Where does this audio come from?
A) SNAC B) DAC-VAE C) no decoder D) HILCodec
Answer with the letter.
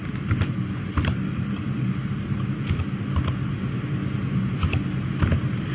C